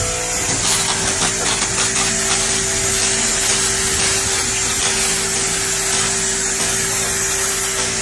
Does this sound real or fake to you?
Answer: real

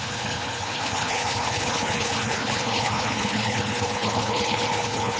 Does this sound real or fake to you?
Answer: fake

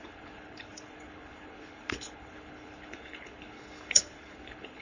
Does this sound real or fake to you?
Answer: fake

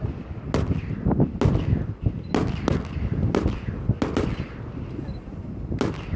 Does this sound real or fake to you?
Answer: real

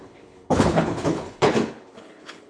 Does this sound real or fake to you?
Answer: fake